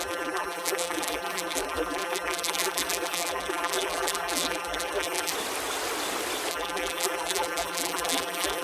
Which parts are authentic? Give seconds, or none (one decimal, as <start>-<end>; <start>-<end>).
5.3-6.5